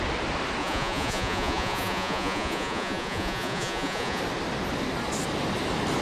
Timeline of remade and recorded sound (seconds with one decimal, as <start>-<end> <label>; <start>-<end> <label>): 0.0-0.6 recorded; 0.6-4.2 remade; 4.2-6.0 recorded